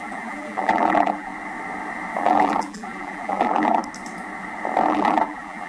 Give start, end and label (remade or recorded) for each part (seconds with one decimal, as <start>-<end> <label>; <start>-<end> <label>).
0.0-1.3 remade; 1.3-2.2 recorded; 2.2-3.8 remade; 3.8-4.9 recorded; 4.9-5.7 remade